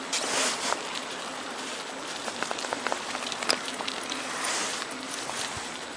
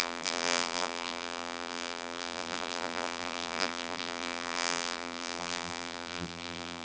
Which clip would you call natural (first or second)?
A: first